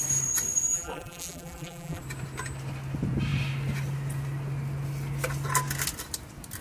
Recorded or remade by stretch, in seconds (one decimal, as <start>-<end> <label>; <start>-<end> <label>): 0.0-0.7 recorded; 0.7-2.0 remade; 2.0-6.6 recorded